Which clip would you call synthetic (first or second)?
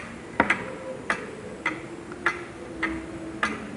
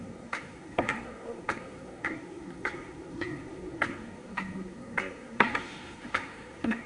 second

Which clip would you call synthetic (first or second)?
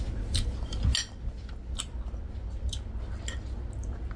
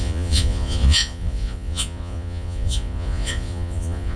second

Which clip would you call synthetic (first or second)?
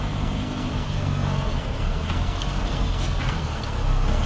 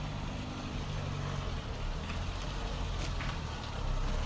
first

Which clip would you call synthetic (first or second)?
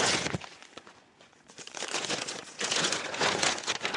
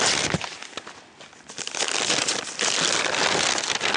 first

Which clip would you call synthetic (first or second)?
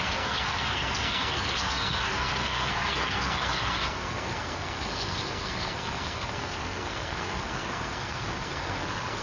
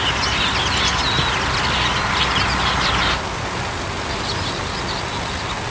first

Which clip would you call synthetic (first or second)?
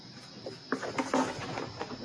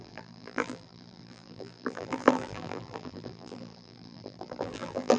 second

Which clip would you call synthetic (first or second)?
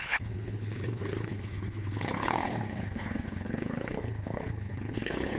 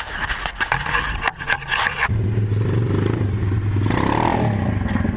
first